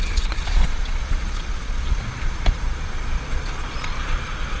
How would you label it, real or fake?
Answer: fake